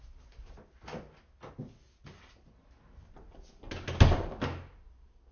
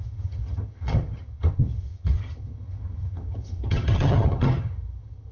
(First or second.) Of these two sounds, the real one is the first